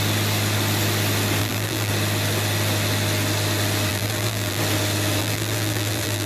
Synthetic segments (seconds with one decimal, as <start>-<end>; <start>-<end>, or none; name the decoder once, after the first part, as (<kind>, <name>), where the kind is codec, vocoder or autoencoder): 1.4-1.9 (vocoder, BigVGAN v2); 3.9-4.6; 5.2-6.3